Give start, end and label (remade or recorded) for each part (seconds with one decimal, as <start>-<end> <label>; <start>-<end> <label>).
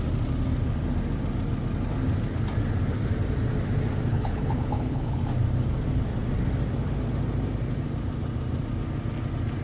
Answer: 0.0-4.1 recorded; 4.1-5.2 remade; 5.2-9.6 recorded